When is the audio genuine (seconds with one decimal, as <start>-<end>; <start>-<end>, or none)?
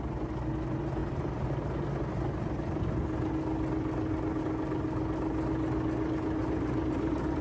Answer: 0.0-6.4